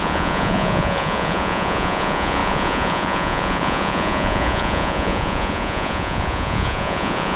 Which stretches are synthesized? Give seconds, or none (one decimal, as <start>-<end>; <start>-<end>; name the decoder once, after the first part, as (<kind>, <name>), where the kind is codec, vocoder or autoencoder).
0.0-7.4 (vocoder, Vocos)